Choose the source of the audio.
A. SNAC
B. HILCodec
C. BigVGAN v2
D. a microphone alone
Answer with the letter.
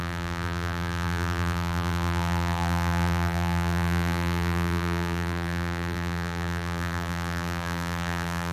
C